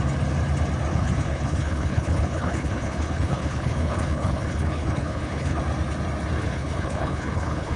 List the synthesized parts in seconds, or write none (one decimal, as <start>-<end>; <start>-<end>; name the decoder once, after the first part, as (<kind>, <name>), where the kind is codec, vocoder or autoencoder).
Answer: 0.9-5.6 (codec, HILCodec); 6.4-7.8